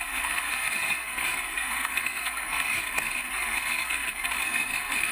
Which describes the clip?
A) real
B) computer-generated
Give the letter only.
B